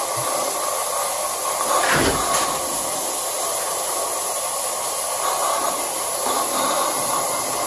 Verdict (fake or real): real